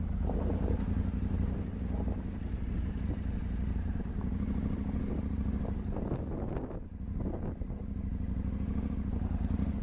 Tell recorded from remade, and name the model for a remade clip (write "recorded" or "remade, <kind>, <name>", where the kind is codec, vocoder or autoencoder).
recorded